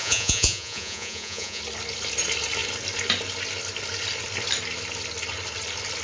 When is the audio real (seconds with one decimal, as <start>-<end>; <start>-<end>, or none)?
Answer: 1.6-6.0